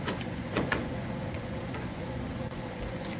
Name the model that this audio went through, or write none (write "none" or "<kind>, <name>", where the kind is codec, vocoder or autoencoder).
vocoder, Vocos